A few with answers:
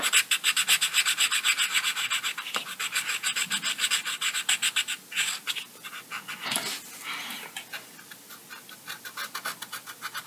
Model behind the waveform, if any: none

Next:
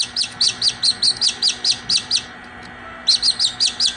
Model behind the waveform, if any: none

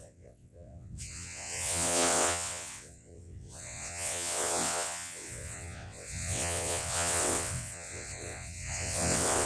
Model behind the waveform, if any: vocoder, WaveNeXt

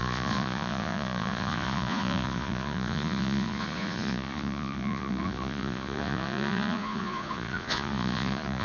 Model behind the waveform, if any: vocoder, Vocos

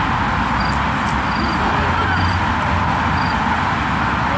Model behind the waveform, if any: none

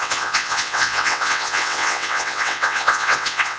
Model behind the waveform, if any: vocoder, WaveNeXt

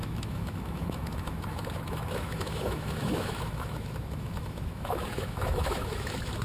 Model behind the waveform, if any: autoencoder, DAC-VAE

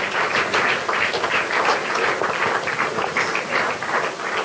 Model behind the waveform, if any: none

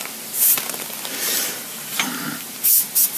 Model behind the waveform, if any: none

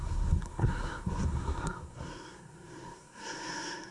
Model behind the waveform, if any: codec, SNAC